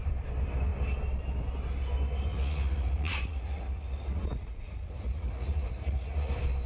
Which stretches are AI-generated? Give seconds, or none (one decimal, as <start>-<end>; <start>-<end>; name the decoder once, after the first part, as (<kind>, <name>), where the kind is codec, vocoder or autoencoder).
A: 2.3-6.3 (vocoder, Vocos)

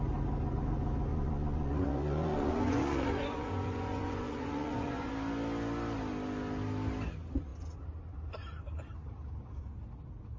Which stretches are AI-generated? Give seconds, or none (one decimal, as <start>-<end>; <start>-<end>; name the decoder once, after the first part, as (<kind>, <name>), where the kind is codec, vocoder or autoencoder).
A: 1.1-5.1 (vocoder, Vocos)

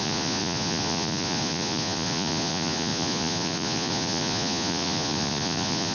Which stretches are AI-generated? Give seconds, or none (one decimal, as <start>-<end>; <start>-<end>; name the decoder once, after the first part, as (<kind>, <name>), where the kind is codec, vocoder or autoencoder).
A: 0.0-5.9 (vocoder, Vocos)

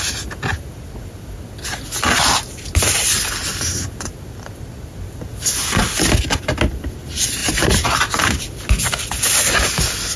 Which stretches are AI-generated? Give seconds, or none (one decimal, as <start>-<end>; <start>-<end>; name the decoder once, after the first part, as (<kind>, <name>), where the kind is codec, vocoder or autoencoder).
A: none

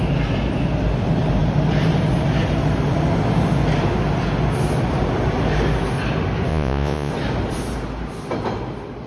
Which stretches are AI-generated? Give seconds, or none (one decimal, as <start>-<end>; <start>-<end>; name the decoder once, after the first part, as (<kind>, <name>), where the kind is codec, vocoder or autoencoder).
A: 6.5-7.1 (vocoder, Vocos)

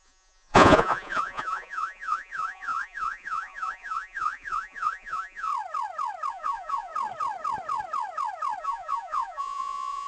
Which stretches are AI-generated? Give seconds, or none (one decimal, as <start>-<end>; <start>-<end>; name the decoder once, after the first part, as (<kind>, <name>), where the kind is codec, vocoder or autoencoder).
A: 0.0-5.5 (vocoder, Vocos); 6.3-6.9; 8.6-10.1

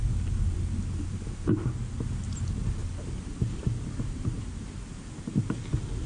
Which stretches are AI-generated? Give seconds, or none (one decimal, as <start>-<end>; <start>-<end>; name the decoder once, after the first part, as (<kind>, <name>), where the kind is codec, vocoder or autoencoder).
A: none